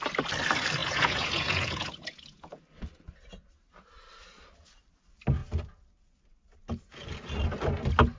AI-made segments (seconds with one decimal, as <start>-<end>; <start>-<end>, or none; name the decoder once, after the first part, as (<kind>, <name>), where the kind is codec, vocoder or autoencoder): 0.8-2.6 (vocoder, Vocos)